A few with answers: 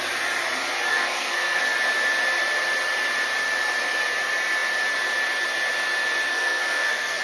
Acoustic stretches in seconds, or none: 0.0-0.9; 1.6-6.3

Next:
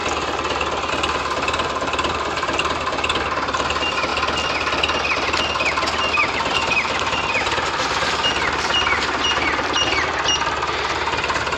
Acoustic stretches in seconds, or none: 0.0-0.9; 4.1-6.1

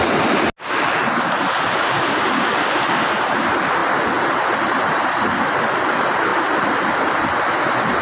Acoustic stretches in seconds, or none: 0.0-6.3; 7.4-8.0

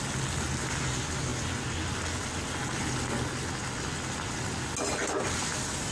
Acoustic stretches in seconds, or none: 0.0-5.9

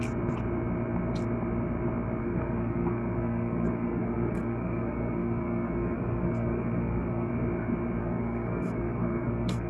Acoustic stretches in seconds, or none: 0.0-2.2; 7.3-8.0

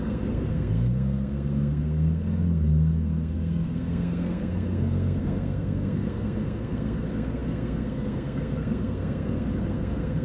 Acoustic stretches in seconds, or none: none

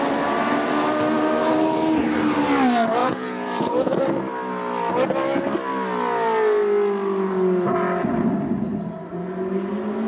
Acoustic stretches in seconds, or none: 0.0-3.0; 4.0-10.1